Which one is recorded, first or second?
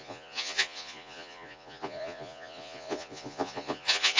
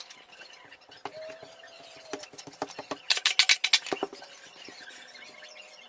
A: second